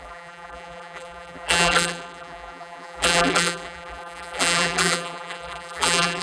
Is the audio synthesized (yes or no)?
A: yes